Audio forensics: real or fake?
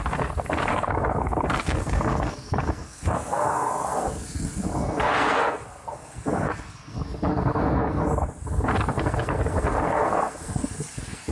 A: fake